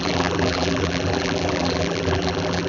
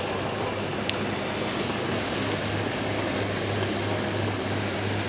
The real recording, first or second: second